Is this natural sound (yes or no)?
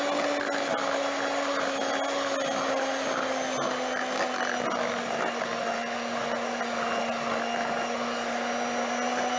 yes